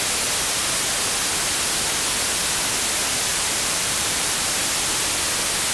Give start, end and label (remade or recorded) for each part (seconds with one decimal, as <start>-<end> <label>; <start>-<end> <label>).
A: 0.0-3.3 recorded; 3.3-4.6 remade; 4.6-5.7 recorded